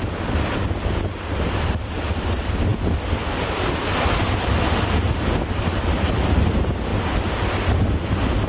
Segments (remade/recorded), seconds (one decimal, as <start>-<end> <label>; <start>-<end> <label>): 0.0-8.5 recorded